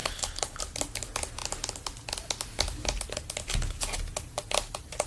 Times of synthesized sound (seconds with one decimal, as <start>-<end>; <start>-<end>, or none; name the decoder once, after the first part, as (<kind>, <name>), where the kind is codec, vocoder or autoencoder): 0.0-0.6 (codec, HILCodec)